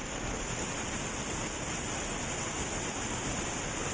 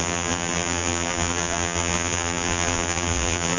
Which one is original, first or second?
first